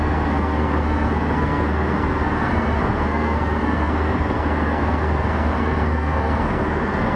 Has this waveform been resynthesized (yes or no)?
yes